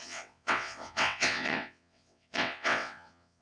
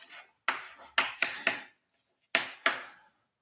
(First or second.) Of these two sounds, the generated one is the first